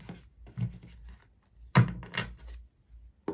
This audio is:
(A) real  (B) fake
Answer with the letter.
A